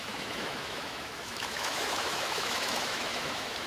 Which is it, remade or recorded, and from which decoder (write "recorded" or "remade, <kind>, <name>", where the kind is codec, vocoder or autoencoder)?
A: remade, autoencoder, DAC-VAE